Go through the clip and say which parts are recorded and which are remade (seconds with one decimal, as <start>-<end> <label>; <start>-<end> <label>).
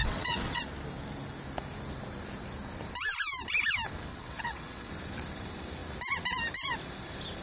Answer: 0.0-0.6 remade; 0.6-4.1 recorded; 4.1-4.9 remade; 4.9-7.4 recorded